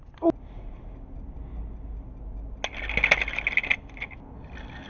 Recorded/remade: recorded